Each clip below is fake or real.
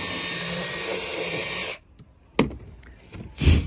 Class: real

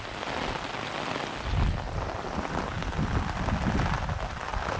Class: real